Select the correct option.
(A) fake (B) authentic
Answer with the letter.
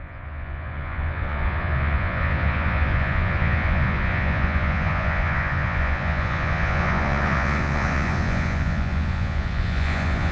A